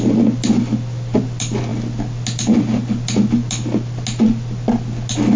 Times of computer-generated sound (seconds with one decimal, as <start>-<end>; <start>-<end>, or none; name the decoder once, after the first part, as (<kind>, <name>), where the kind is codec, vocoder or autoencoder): none